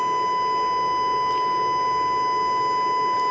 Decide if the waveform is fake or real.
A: real